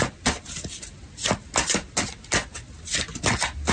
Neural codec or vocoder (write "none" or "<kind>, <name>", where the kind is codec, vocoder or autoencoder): none